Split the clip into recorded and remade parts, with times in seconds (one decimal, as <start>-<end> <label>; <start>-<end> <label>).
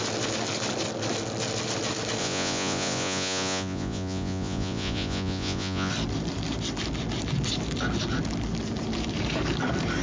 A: 0.0-2.2 recorded; 2.2-5.9 remade; 5.9-10.0 recorded